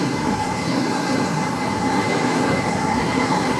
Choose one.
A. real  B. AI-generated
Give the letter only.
B